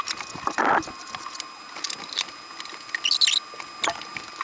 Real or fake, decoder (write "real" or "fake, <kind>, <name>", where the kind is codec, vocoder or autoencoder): real